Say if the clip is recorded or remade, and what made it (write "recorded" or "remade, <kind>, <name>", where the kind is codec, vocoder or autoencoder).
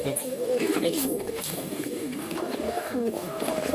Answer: remade, codec, DAC